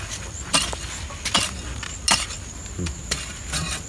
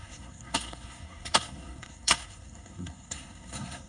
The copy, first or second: second